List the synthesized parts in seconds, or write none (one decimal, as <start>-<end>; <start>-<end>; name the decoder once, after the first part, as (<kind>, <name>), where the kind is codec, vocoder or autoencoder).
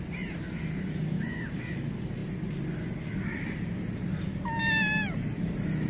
none